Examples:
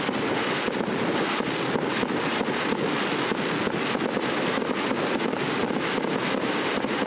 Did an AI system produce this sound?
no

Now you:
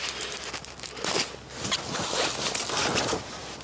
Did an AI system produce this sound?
no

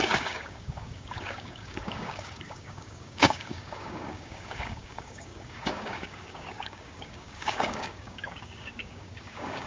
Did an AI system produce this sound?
yes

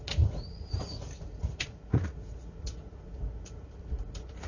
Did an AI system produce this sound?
yes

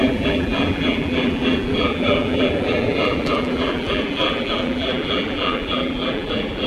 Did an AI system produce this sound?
yes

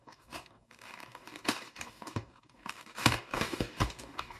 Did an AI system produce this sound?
yes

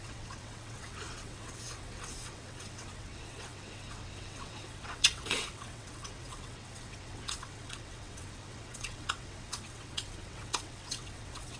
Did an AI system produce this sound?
yes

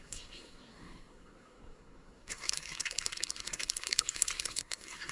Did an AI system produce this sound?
yes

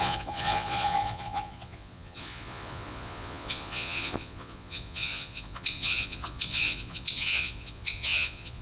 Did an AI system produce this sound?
yes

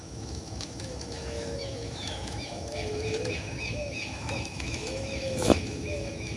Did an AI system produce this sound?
yes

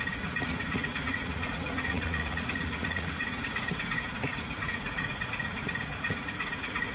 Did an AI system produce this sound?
yes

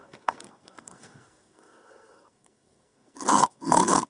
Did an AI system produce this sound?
yes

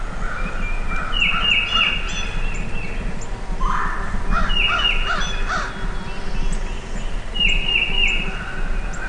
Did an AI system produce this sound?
no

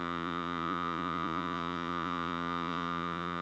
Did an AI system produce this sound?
yes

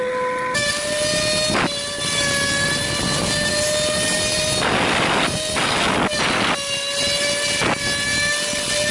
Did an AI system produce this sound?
no